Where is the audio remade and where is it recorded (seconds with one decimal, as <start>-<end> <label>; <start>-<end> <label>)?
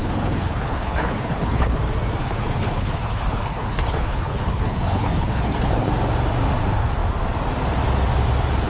0.0-1.8 remade; 1.8-2.2 recorded; 2.2-5.9 remade; 5.9-8.7 recorded